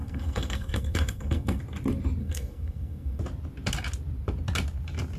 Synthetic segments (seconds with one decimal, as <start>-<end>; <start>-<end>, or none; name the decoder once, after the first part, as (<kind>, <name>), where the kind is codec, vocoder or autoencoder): 0.0-1.6 (codec, SNAC); 2.2-3.2

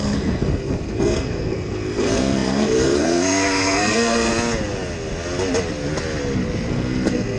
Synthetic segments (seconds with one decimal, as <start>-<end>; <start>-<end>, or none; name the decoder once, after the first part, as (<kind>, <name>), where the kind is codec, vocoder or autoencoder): 0.0-4.3 (codec, SNAC); 6.7-7.4

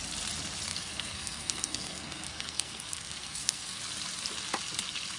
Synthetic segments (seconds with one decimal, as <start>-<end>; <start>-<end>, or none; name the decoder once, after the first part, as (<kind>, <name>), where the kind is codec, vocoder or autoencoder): 0.7-3.8 (codec, SNAC)

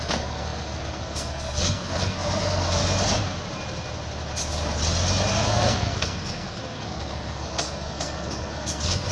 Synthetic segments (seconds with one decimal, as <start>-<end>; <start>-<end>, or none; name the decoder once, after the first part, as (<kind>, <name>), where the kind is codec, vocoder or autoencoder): 0.0-2.8 (codec, SNAC); 5.3-9.1